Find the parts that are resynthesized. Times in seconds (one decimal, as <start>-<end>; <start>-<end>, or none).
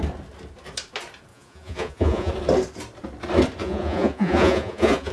1.3-2.3; 3.6-5.1